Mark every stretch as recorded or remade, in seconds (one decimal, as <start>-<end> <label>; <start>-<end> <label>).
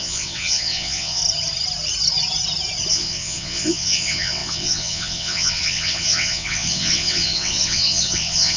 0.0-1.2 remade; 1.2-2.9 recorded; 2.9-8.6 remade